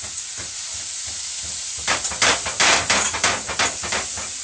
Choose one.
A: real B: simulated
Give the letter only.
A